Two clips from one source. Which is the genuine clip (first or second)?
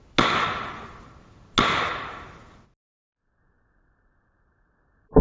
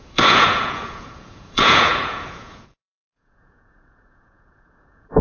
first